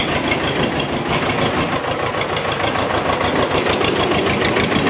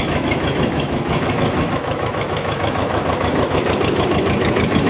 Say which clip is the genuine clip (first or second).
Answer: first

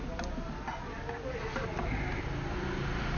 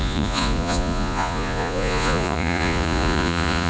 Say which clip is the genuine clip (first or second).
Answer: first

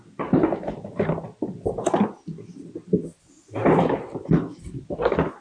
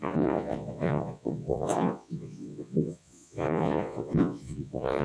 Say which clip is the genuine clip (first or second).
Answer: first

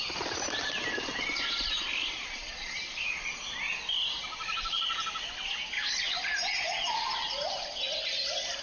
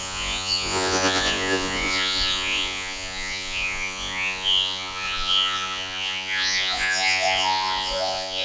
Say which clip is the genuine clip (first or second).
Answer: first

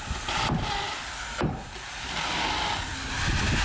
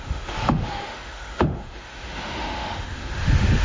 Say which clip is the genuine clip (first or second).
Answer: first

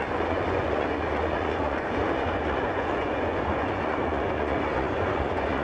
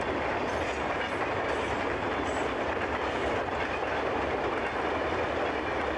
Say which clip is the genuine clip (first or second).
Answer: second